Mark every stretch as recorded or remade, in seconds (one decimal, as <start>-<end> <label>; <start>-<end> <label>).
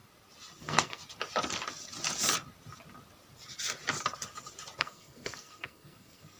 0.0-0.6 recorded; 0.6-1.0 remade; 1.0-4.8 recorded; 4.8-6.4 remade